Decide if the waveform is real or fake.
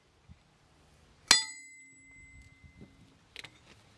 real